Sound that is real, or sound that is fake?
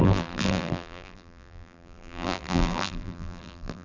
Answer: fake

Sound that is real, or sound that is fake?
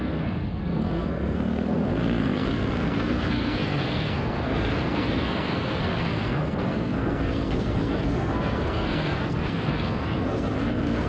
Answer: fake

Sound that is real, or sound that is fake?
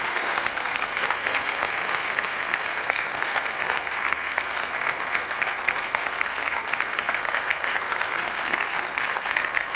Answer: fake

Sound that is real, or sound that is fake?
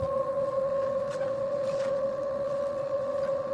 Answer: fake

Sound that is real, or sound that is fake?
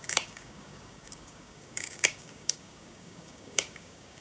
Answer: fake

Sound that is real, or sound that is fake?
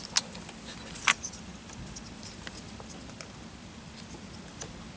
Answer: real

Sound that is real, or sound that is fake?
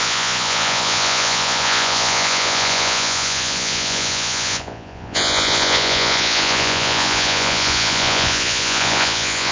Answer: fake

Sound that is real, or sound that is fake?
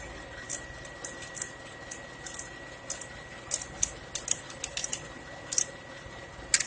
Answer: real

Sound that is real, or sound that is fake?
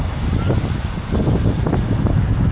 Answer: real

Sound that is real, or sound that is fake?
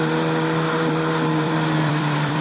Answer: fake